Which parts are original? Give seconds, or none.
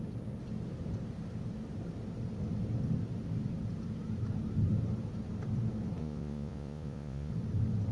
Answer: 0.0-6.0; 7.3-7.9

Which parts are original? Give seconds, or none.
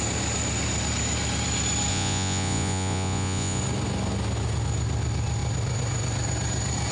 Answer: 0.0-1.9; 3.6-6.9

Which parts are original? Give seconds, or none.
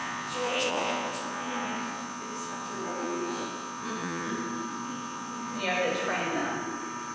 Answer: 4.3-4.7; 5.6-7.1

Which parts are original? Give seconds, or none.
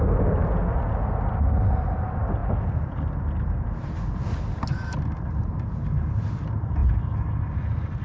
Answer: 0.0-8.0